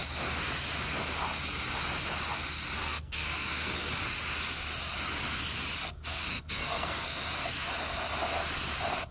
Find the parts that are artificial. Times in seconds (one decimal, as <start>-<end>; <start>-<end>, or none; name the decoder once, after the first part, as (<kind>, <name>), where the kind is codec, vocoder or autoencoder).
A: 2.8-4.0 (codec, SNAC); 6.3-7.0